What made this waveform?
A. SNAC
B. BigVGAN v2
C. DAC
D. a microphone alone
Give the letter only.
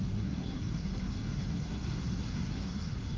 A